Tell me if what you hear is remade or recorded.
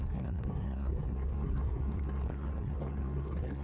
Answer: remade